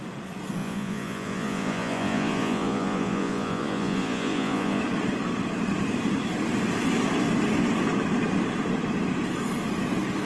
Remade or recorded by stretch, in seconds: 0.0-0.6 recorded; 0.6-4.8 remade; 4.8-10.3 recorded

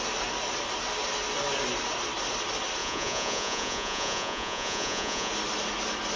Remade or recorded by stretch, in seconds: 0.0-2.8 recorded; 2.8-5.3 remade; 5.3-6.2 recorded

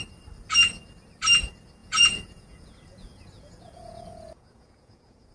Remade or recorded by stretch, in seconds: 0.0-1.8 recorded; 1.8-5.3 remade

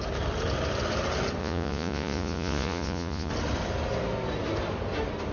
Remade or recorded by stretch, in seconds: 0.0-1.4 recorded; 1.4-3.3 remade; 3.3-5.3 recorded

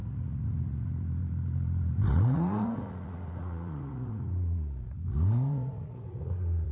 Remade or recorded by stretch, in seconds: 0.0-6.7 remade

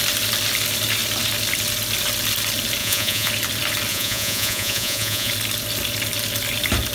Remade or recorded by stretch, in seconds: 0.0-2.8 recorded; 2.8-3.3 remade; 3.3-3.9 recorded; 3.9-5.3 remade; 5.3-6.9 recorded